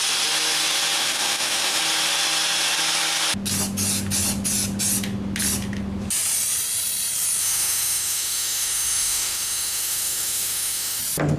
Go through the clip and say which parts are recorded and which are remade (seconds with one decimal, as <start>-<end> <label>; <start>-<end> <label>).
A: 0.0-1.0 recorded; 1.0-1.8 remade; 1.8-7.4 recorded; 7.4-11.0 remade; 11.0-11.4 recorded